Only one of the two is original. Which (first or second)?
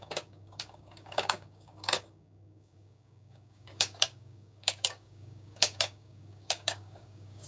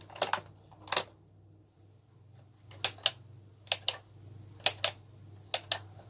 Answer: second